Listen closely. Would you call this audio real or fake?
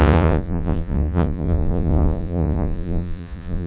fake